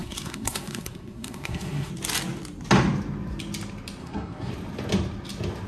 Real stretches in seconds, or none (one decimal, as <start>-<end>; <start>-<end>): 1.9-4.0; 4.5-5.7